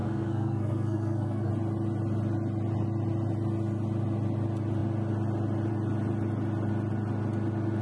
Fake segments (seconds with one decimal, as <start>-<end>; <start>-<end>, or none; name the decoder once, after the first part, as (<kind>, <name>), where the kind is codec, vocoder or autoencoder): 0.0-1.5 (codec, SNAC)